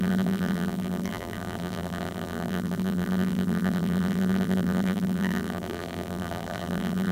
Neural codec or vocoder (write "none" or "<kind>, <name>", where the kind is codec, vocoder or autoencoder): vocoder, BigVGAN v2